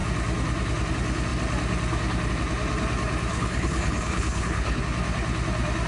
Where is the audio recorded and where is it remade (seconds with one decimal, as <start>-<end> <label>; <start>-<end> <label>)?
0.0-3.3 recorded; 3.3-4.8 remade; 4.8-5.9 recorded